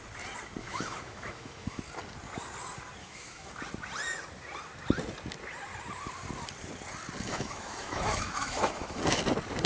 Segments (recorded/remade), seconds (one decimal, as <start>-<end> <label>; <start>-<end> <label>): 0.0-0.6 recorded; 0.6-1.8 remade; 1.8-3.0 recorded; 3.0-3.5 remade; 3.5-7.3 recorded; 7.3-9.0 remade; 9.0-9.7 recorded

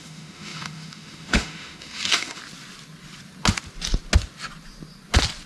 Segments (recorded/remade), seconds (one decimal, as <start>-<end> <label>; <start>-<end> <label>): 0.0-2.4 remade; 2.4-5.5 recorded

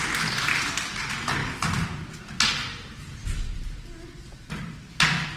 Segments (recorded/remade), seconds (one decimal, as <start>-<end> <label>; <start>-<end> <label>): 0.0-5.4 recorded

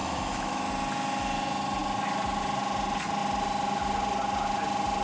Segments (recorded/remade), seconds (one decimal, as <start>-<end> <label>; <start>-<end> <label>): 0.0-0.7 remade; 0.7-5.0 recorded

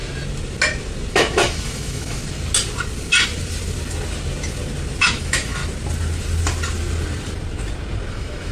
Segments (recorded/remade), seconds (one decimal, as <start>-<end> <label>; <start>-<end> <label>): 0.0-1.1 recorded; 1.1-2.2 remade; 2.2-5.0 recorded; 5.0-5.6 remade; 5.6-8.1 recorded; 8.1-8.5 remade